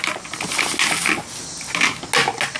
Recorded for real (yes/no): yes